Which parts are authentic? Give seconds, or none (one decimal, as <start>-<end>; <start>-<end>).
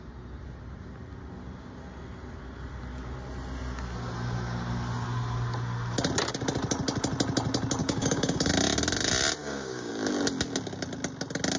0.0-7.8; 8.5-9.4; 9.9-11.6